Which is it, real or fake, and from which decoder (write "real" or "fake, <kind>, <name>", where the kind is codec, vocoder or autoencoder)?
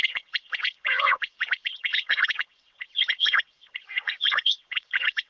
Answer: fake, vocoder, WaveNeXt